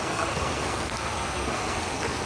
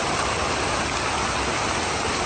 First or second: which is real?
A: second